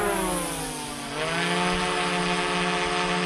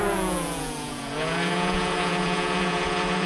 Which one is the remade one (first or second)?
second